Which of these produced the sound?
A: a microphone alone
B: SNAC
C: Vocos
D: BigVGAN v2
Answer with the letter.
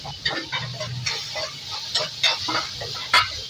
A